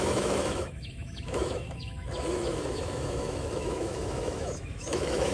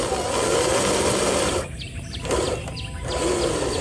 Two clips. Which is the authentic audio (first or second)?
second